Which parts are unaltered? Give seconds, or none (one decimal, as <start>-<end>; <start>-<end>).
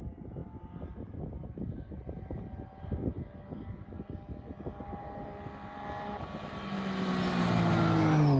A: 0.0-8.4